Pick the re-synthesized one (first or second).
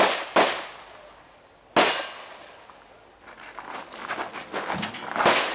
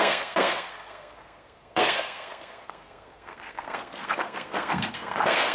second